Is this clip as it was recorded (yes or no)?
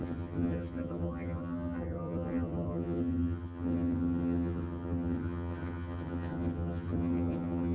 no